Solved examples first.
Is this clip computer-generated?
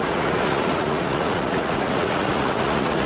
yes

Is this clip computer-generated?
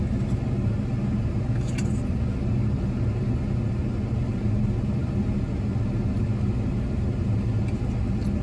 no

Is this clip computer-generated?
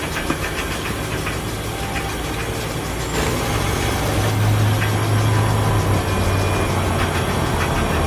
no